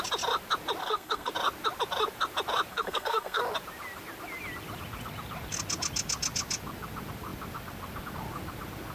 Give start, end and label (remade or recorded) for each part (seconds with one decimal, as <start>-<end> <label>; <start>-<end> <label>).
0.0-0.8 recorded; 0.8-1.3 remade; 1.3-2.7 recorded; 2.7-3.4 remade; 3.4-8.9 recorded